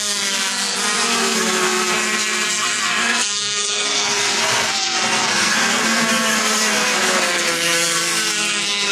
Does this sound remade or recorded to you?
remade